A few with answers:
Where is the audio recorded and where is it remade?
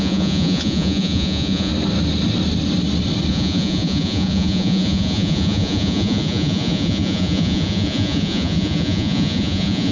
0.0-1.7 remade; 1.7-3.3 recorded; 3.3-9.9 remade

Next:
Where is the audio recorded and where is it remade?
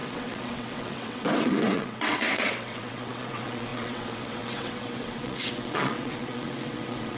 0.0-7.2 remade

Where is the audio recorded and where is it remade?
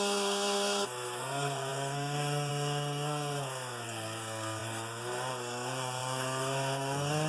0.0-7.3 remade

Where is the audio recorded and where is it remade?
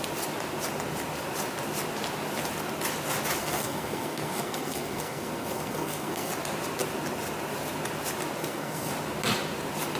0.0-3.4 recorded; 3.4-6.3 remade; 6.3-8.4 recorded; 8.4-8.9 remade; 8.9-10.0 recorded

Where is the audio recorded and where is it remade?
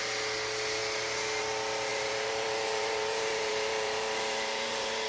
0.0-1.9 recorded; 1.9-5.1 remade